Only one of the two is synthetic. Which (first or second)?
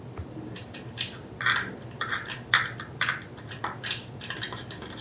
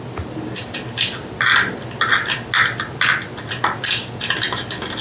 first